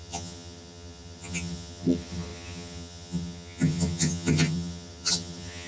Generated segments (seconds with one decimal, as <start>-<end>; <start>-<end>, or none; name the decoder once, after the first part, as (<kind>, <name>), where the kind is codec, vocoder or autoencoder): 0.0-5.7 (vocoder, HiFi-GAN)